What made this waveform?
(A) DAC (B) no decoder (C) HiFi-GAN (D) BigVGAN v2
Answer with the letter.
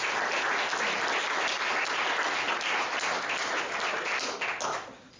B